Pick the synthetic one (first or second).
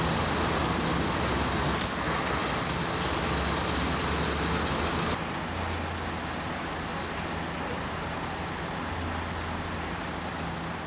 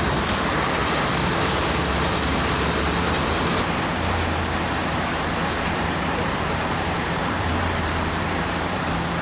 second